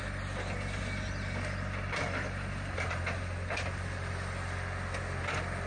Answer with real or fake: real